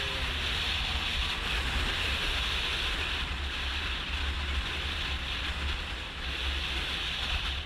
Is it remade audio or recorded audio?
recorded